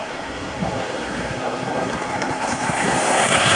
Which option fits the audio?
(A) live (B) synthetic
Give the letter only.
B